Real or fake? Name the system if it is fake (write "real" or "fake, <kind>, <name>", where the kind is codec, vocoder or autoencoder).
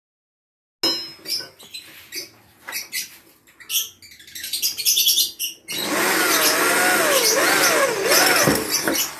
real